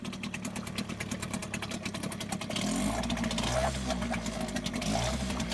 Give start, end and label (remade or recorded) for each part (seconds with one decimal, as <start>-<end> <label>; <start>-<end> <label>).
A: 0.0-1.4 remade; 1.4-4.7 recorded; 4.7-5.5 remade